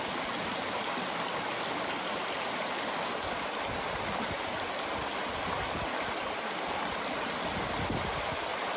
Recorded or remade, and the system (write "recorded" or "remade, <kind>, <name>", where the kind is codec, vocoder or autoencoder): recorded